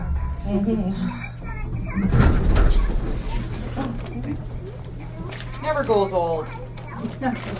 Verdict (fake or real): real